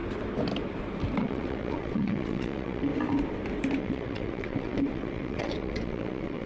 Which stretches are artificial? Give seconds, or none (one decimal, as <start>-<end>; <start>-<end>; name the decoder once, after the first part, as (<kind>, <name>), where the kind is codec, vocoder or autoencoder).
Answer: 1.2-2.9 (vocoder, WaveNeXt); 3.8-6.5